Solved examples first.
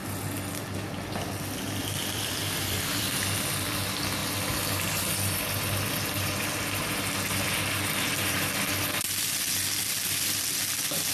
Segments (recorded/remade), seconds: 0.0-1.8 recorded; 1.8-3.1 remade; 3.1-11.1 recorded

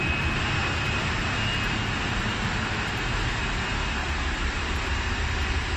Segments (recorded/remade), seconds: 0.0-0.6 recorded; 0.6-2.9 remade; 2.9-4.0 recorded; 4.0-4.7 remade; 4.7-5.8 recorded

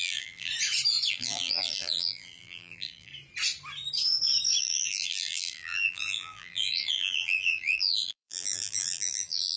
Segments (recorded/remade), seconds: 0.0-0.5 remade; 0.5-1.1 recorded; 1.1-3.1 remade; 3.1-4.6 recorded; 4.6-9.6 remade

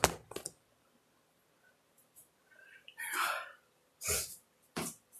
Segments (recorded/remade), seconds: 0.0-2.2 recorded; 2.2-5.2 remade

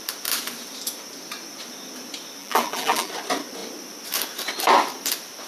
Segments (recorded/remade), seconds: 0.0-2.4 recorded; 2.4-3.1 remade; 3.1-5.5 recorded

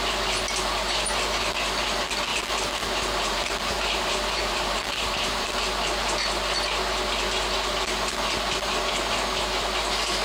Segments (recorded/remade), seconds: 0.0-2.3 recorded; 2.3-5.6 remade; 5.6-10.2 recorded

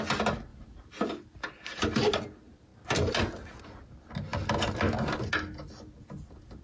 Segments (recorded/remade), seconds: 0.0-0.5 recorded; 0.5-1.1 remade; 1.1-6.6 recorded

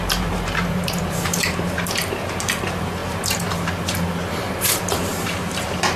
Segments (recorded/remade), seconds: 0.0-6.0 remade